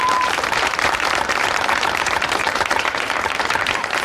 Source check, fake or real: fake